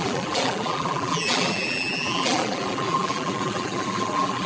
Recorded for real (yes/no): no